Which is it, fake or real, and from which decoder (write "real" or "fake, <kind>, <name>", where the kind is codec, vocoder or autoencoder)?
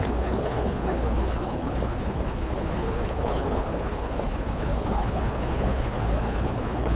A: fake, codec, HILCodec